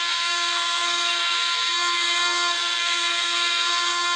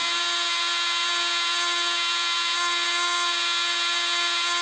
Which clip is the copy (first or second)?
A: first